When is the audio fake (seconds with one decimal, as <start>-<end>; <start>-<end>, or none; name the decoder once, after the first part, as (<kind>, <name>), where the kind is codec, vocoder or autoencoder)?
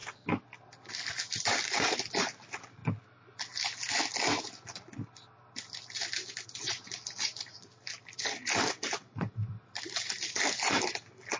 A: 0.9-2.8 (vocoder, BigVGAN v2); 7.4-11.4